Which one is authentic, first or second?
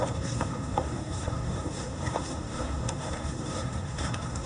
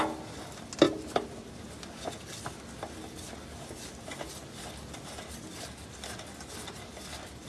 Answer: second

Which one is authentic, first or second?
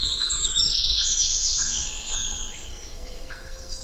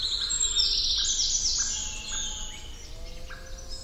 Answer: second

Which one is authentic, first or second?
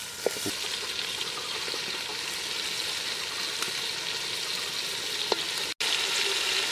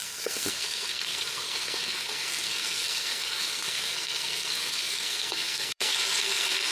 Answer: first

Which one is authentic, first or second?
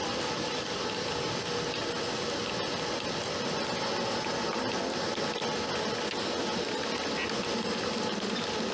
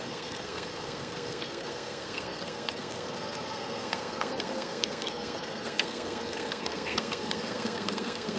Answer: first